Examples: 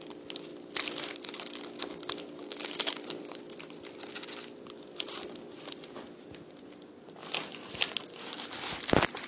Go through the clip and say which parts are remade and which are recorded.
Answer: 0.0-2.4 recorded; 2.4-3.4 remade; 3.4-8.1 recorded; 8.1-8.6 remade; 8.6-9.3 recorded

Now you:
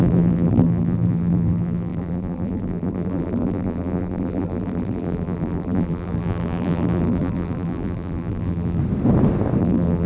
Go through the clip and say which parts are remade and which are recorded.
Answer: 0.0-8.8 remade; 8.8-9.6 recorded; 9.6-10.1 remade